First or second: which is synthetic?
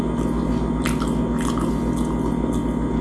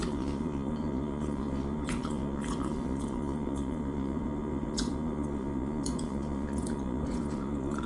second